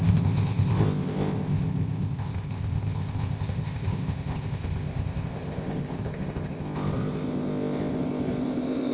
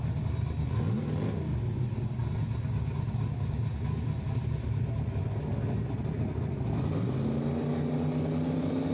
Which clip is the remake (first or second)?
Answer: first